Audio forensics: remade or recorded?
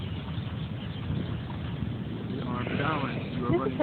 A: recorded